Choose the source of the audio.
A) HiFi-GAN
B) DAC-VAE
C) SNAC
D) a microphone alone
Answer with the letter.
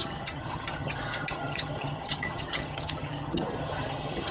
A